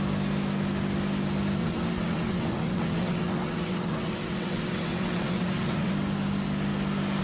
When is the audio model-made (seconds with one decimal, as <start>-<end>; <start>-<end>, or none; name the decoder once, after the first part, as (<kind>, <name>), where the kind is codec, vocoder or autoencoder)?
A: 1.6-5.9 (vocoder, WaveNeXt)